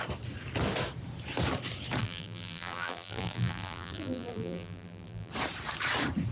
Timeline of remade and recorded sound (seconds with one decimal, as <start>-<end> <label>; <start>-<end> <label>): 0.0-2.0 recorded; 2.0-5.3 remade; 5.3-6.3 recorded